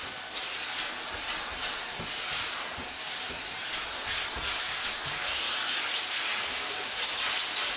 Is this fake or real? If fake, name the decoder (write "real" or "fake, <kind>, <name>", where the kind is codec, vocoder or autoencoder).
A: real